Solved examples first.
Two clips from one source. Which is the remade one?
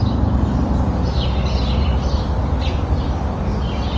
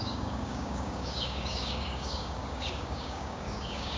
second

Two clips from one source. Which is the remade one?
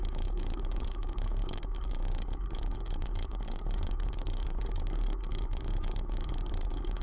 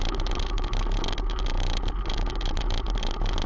first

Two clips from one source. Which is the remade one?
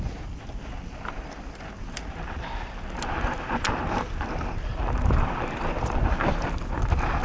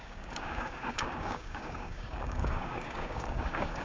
second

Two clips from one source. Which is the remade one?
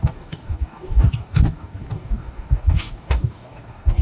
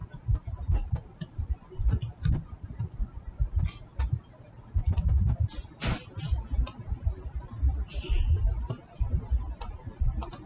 first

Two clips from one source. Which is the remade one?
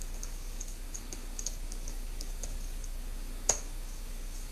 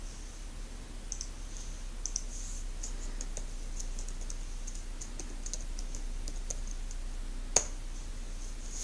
first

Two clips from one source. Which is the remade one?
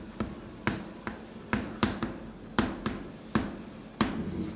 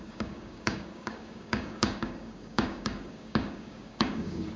second